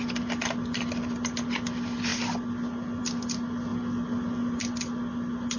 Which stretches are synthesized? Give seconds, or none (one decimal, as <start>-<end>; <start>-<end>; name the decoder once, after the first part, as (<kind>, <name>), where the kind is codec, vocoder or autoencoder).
none